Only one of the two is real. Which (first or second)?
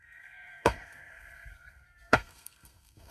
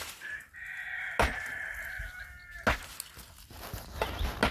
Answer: second